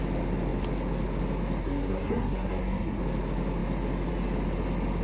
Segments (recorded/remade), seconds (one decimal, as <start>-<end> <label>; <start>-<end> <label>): 0.0-1.6 recorded; 1.6-3.0 remade; 3.0-5.0 recorded